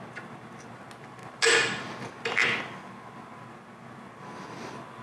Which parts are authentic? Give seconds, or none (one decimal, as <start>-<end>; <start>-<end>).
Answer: 0.0-5.0